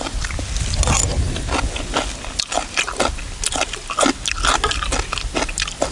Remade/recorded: recorded